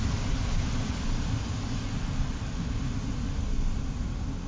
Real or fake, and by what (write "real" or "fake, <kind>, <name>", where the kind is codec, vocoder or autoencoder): real